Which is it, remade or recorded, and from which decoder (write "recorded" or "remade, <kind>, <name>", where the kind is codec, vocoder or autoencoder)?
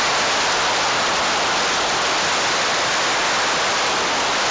recorded